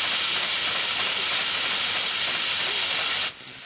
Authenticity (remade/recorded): recorded